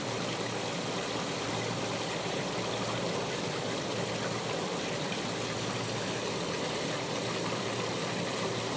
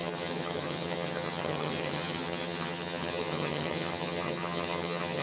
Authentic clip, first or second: first